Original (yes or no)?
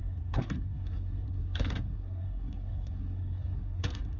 no